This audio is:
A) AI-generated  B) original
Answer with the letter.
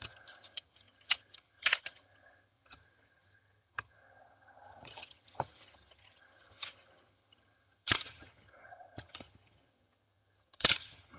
A